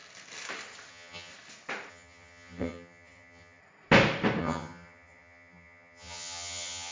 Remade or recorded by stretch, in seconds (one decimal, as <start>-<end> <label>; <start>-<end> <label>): 0.0-0.9 recorded; 0.9-1.3 remade; 1.3-1.9 recorded; 1.9-3.6 remade; 3.6-4.4 recorded; 4.4-6.9 remade